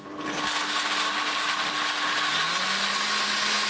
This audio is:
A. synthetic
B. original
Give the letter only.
B